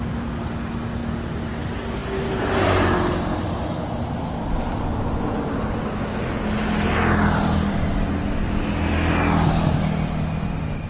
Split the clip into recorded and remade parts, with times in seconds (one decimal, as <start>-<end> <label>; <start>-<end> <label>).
0.0-10.9 recorded